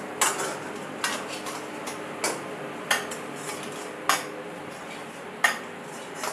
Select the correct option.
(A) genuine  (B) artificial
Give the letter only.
A